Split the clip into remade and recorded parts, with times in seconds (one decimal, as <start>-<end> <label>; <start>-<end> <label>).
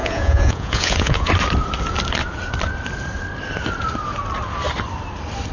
0.0-1.3 remade; 1.3-5.5 recorded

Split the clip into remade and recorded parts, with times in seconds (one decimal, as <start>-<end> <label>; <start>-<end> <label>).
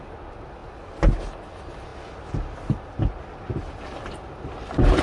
0.0-5.0 recorded